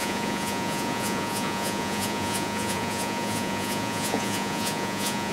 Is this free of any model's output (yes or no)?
no